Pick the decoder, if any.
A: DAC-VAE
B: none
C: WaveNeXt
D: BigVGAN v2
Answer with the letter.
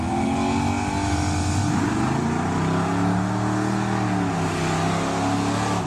B